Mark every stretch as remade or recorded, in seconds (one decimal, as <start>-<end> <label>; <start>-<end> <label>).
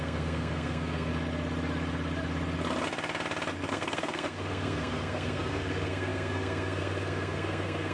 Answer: 0.0-1.1 remade; 1.1-3.7 recorded; 3.7-7.9 remade